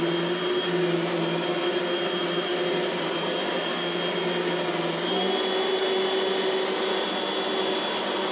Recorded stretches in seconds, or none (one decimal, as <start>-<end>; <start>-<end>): 0.0-8.3